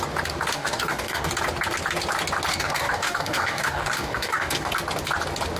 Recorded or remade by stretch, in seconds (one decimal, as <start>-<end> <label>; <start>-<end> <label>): 0.0-0.5 recorded; 0.5-1.3 remade; 1.3-2.5 recorded; 2.5-4.7 remade; 4.7-5.6 recorded